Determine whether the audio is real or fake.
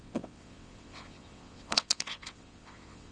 fake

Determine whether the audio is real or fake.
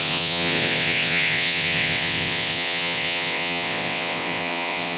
fake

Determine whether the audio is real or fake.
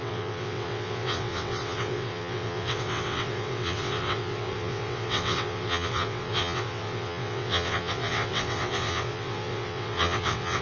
fake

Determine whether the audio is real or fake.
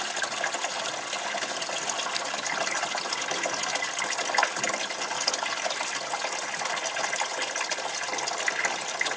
real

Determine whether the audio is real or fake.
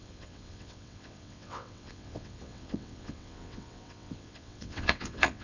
fake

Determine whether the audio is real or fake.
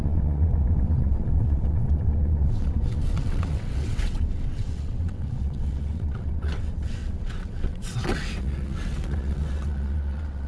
fake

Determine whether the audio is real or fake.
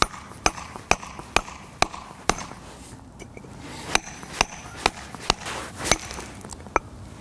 real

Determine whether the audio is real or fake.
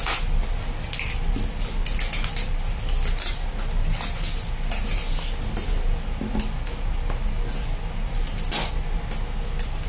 real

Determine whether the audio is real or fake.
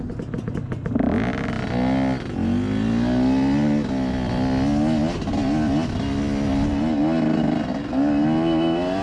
real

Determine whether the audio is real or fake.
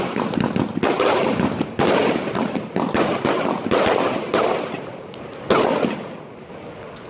real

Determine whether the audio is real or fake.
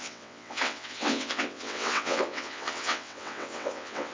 fake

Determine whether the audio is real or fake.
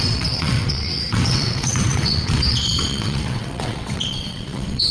fake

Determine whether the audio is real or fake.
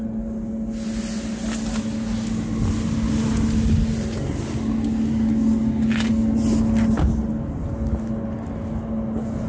real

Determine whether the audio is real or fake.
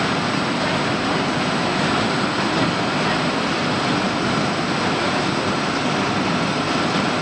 real